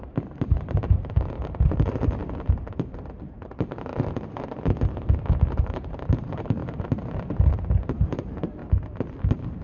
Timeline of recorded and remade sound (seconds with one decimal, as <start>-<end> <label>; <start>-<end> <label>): 0.0-2.2 remade; 2.2-3.2 recorded; 3.2-3.9 remade; 3.9-5.6 recorded; 5.6-6.6 remade; 6.6-7.8 recorded; 7.8-8.6 remade; 8.6-9.2 recorded; 9.2-9.6 remade